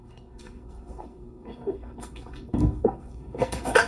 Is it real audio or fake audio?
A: fake